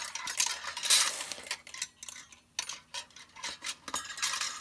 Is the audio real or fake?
real